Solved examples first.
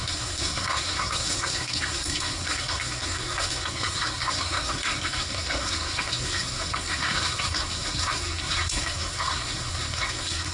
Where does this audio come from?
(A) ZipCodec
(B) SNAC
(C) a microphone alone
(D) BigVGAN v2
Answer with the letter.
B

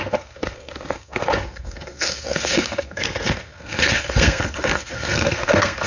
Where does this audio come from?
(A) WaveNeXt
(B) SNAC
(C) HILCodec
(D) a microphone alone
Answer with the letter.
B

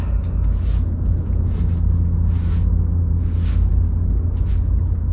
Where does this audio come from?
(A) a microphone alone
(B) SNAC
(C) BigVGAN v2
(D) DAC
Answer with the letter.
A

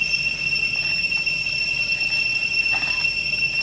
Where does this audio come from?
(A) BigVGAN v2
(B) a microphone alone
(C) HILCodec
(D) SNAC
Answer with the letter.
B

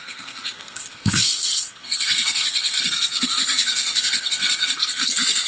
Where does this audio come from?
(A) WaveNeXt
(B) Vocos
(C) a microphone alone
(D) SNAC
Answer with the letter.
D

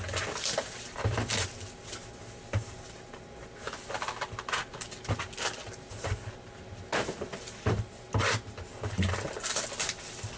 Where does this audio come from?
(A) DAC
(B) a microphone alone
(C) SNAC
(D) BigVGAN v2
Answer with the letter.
B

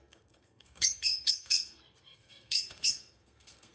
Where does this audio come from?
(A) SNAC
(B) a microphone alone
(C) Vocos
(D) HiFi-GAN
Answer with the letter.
A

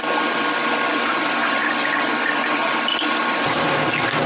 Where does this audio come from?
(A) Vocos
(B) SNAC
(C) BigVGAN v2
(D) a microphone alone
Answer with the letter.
D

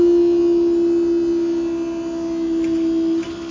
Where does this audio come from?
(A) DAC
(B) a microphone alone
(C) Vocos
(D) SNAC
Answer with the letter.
B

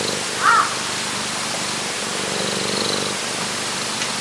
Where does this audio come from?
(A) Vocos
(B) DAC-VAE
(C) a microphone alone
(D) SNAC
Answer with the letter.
C